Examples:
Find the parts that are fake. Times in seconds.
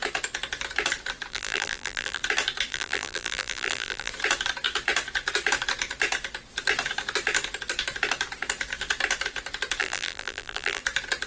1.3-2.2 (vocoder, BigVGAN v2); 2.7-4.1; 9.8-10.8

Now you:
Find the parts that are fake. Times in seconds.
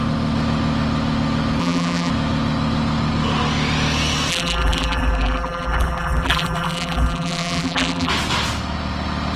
1.6-2.1 (vocoder, BigVGAN v2); 4.3-8.1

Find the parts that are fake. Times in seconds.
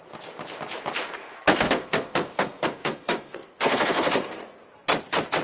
1.2-4.4 (codec, SNAC)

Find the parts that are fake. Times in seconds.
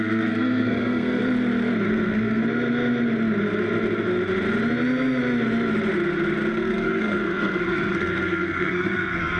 0.0-1.2 (codec, SNAC); 1.9-2.4; 6.5-9.4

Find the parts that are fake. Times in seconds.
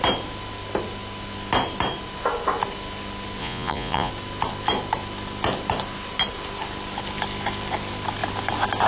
3.4-4.1 (vocoder, Vocos)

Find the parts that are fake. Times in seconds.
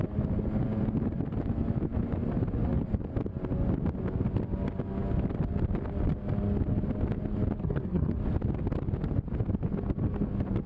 7.6-8.2 (codec, SNAC)